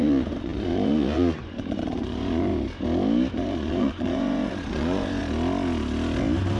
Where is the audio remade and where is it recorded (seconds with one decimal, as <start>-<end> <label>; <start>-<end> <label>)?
0.0-2.5 remade; 2.5-3.3 recorded; 3.3-5.2 remade; 5.2-6.6 recorded

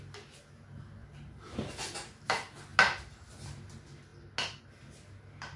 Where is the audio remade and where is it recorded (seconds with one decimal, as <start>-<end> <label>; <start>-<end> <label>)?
0.0-5.6 recorded

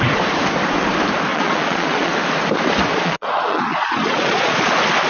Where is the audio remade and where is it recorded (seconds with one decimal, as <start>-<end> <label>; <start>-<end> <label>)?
0.0-1.3 recorded; 1.3-2.1 remade; 2.1-2.9 recorded; 2.9-4.6 remade; 4.6-5.1 recorded

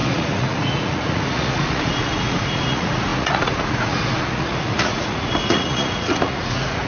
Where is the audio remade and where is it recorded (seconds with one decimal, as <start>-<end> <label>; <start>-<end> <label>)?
0.0-6.9 remade

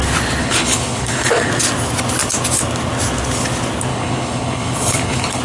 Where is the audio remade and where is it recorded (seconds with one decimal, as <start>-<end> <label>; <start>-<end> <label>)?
0.0-0.4 recorded; 0.4-1.5 remade; 1.5-3.9 recorded; 3.9-5.4 remade

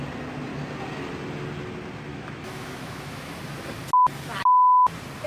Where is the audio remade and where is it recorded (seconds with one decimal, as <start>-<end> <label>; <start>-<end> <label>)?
0.0-2.1 recorded; 2.1-3.4 remade; 3.4-5.3 recorded

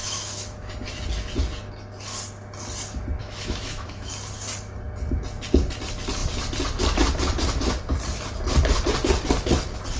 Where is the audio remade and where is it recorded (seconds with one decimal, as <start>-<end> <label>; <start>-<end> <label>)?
0.0-0.7 remade; 0.7-3.2 recorded; 3.2-4.1 remade; 4.1-10.0 recorded